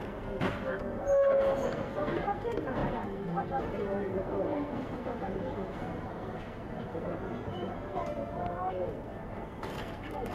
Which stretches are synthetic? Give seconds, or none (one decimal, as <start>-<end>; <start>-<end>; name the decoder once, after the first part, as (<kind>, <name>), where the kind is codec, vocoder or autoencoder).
0.0-10.3 (codec, SNAC)

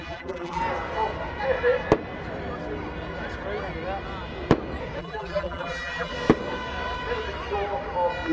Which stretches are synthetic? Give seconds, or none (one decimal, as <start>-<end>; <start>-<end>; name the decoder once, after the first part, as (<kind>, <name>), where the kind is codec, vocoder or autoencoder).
0.0-0.6 (vocoder, BigVGAN v2); 5.0-6.1

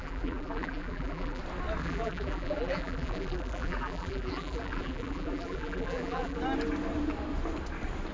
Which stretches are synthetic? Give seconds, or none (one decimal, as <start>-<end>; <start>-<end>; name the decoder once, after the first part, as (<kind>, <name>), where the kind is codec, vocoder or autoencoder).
0.0-1.4 (vocoder, BigVGAN v2); 1.8-6.4

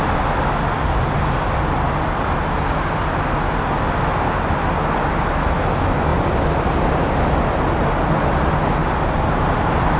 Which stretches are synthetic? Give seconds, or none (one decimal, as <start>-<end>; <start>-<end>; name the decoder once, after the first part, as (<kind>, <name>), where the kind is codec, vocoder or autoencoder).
none

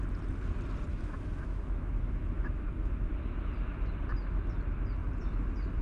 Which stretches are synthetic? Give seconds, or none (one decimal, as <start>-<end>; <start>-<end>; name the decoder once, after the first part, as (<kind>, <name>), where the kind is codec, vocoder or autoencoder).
0.9-3.1 (autoencoder, DAC-VAE)

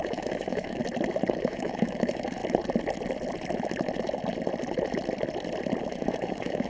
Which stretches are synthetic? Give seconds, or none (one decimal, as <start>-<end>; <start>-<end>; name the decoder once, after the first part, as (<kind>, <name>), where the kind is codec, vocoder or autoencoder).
0.0-0.8 (autoencoder, DAC-VAE); 1.3-2.4; 5.8-6.7